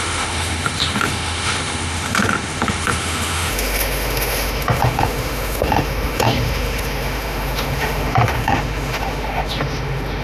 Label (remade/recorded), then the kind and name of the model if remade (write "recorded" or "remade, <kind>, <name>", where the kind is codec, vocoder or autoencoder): remade, autoencoder, DAC-VAE